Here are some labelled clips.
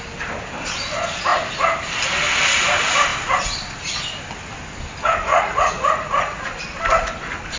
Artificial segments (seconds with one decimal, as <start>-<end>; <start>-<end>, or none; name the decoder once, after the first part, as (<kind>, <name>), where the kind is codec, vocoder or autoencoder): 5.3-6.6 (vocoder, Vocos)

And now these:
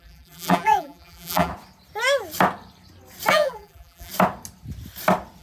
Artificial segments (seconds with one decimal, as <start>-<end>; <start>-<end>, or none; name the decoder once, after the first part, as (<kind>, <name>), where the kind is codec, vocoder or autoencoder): 0.0-1.5 (vocoder, BigVGAN v2); 3.3-4.1

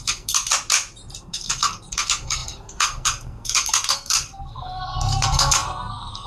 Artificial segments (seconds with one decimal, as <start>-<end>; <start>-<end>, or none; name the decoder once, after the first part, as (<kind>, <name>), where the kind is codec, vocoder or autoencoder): 0.0-0.5 (codec, SNAC); 1.2-6.3

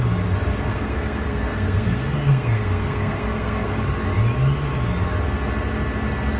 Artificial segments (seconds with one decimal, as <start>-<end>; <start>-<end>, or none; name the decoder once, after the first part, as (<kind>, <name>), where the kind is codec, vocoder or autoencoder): 0.7-3.8 (codec, SNAC)